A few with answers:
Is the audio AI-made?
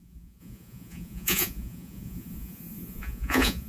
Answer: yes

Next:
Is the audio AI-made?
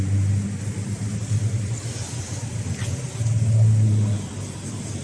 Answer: no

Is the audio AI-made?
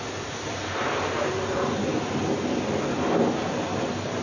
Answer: no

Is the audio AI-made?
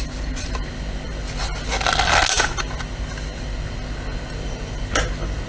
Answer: no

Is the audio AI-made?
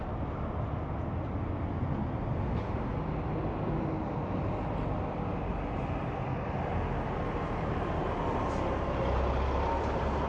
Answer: no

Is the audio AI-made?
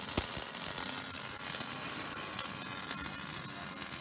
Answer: no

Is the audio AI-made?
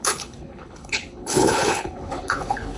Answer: yes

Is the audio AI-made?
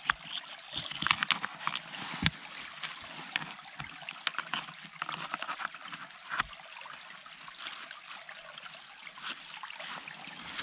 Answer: no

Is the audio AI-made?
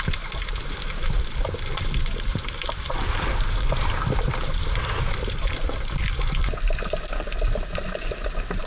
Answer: yes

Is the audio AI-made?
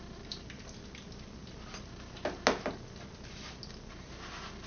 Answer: no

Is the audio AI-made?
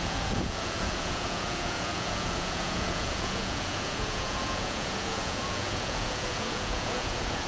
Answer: yes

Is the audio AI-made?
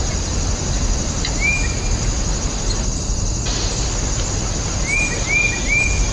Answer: no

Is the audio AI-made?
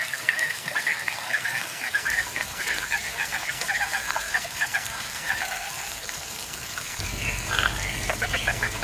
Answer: yes